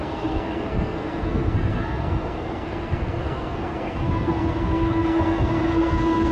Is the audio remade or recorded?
remade